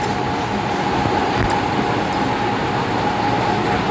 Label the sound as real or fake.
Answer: real